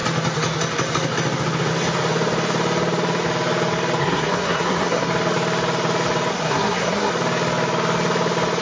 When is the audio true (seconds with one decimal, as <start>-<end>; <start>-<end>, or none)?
0.0-4.0; 5.1-6.3; 7.1-8.6